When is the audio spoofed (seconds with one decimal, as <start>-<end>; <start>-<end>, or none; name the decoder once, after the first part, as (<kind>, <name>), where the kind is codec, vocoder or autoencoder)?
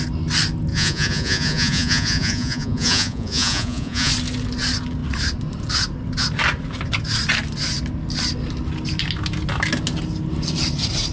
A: 0.7-4.1 (vocoder, Vocos)